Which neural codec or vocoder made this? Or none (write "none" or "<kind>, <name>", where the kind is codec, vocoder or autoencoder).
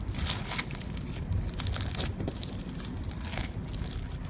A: none